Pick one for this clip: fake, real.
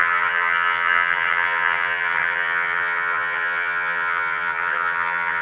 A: fake